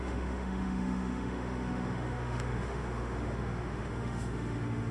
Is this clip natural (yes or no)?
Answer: no